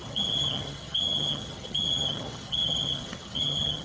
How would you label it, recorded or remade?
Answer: remade